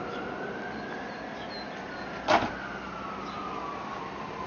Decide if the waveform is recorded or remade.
recorded